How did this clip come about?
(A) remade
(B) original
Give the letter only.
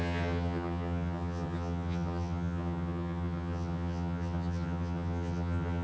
A